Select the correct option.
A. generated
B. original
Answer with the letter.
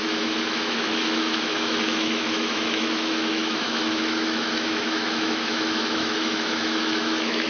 A